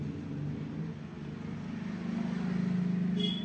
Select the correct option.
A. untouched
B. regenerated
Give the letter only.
A